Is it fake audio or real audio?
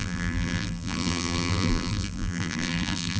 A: fake